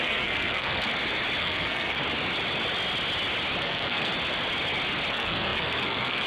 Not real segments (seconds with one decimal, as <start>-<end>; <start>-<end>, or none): 0.0-0.9; 1.4-2.0; 3.6-4.1; 5.1-6.3